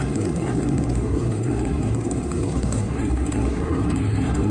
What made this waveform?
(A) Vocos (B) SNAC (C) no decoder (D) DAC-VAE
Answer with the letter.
B